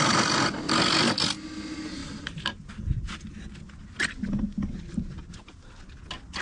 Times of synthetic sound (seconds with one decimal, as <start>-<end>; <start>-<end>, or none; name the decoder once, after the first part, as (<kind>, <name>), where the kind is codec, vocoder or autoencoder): none